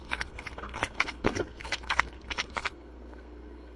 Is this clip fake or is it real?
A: fake